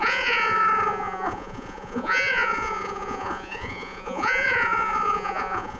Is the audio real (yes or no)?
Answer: no